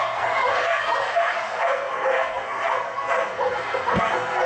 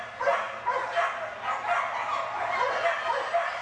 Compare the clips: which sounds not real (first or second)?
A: first